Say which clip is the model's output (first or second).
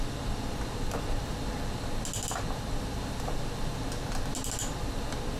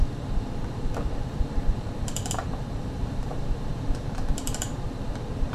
second